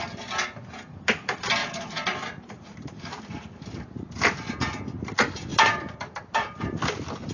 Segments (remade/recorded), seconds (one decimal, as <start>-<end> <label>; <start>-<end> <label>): 0.0-1.6 recorded; 1.6-4.1 remade; 4.1-5.5 recorded; 5.5-6.7 remade; 6.7-7.3 recorded